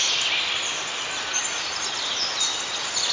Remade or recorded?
recorded